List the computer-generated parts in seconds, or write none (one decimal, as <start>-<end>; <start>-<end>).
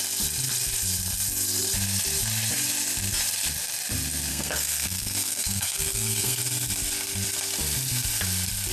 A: 4.3-6.4